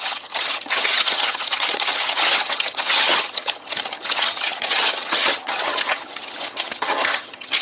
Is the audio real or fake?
fake